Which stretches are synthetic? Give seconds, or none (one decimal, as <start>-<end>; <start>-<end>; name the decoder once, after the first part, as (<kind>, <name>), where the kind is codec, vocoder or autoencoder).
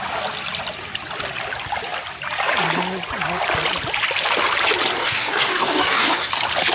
5.0-6.3 (codec, DAC)